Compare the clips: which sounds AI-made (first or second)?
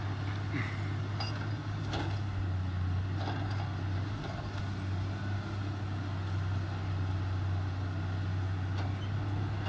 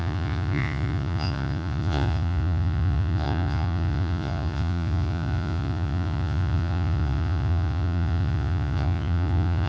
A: second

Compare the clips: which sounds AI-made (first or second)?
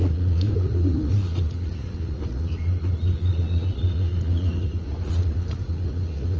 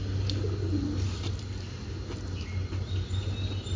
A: first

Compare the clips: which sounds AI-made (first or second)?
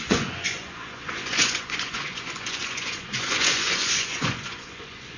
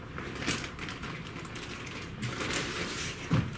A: first